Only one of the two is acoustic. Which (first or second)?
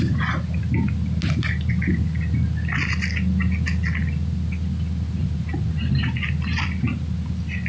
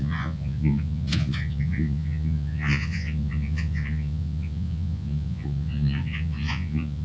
first